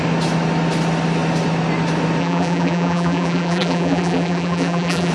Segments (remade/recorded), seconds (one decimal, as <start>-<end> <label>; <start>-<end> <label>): 0.0-2.2 recorded; 2.2-5.1 remade

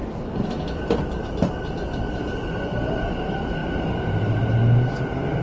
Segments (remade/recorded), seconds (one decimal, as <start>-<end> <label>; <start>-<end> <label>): 0.0-5.4 recorded

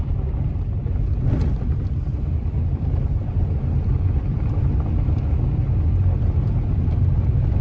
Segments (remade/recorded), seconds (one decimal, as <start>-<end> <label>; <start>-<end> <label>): 0.0-2.1 recorded; 2.1-4.9 remade; 4.9-7.6 recorded

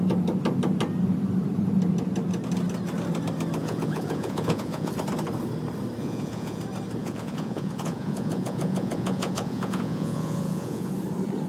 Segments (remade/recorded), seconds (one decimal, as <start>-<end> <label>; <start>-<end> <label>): 0.0-3.6 recorded; 3.6-4.9 remade; 4.9-6.0 recorded; 6.0-6.6 remade; 6.6-7.0 recorded; 7.0-10.9 remade; 10.9-11.5 recorded

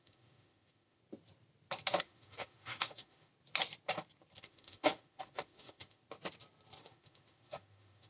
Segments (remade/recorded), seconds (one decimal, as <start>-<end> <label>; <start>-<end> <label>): 0.0-1.0 remade; 1.0-2.0 recorded; 2.0-3.3 remade; 3.3-4.4 recorded; 4.4-6.0 remade; 6.0-6.8 recorded; 6.8-8.1 remade